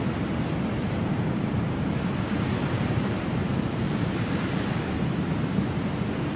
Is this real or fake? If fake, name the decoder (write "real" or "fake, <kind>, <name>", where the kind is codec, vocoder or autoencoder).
fake, vocoder, BigVGAN v2